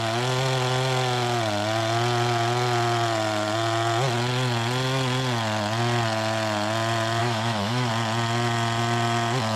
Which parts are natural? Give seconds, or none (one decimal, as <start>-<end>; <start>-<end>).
0.0-7.2; 7.9-9.6